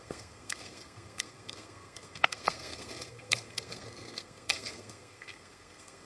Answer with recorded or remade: remade